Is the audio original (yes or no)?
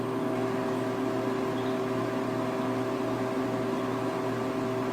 yes